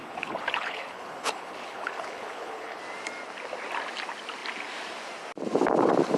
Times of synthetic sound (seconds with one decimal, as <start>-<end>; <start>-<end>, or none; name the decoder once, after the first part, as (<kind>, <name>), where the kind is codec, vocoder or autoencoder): 0.0-2.8 (codec, HILCodec)